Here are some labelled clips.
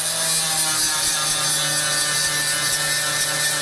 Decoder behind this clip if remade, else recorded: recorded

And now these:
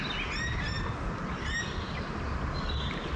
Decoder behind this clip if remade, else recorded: recorded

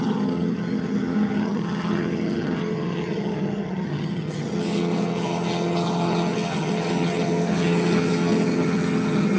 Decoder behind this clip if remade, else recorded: remade, vocoder, HiFi-GAN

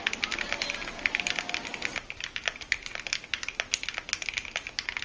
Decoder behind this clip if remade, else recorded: recorded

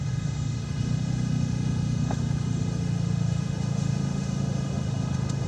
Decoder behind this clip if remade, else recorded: remade, autoencoder, DAC-VAE